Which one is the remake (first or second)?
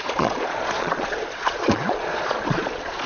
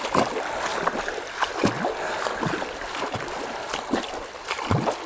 first